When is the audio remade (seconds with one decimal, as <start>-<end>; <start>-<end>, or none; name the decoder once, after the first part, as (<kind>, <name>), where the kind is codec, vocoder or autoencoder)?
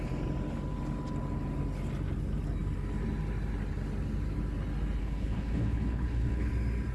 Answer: 5.0-6.5 (codec, HILCodec)